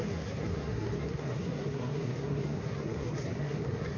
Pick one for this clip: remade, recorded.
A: remade